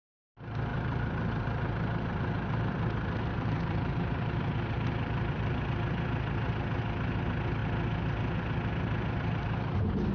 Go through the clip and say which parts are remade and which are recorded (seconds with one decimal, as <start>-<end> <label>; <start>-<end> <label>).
0.0-0.7 recorded; 0.7-5.6 remade; 5.6-10.1 recorded